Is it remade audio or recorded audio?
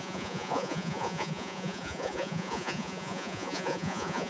remade